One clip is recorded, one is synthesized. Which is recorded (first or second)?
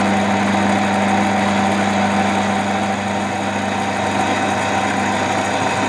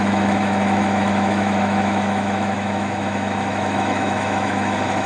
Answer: first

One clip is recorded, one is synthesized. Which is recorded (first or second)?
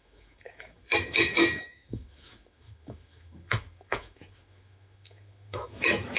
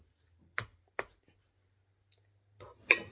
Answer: second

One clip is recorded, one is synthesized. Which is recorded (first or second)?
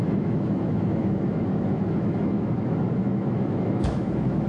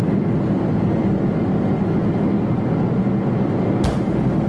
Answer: second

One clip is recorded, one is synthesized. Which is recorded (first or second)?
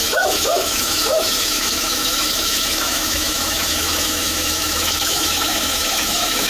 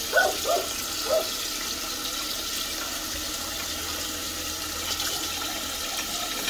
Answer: second